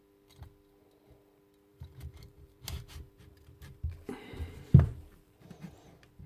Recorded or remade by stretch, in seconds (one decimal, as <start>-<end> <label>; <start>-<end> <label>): 0.0-1.7 recorded; 1.7-5.5 remade; 5.5-6.3 recorded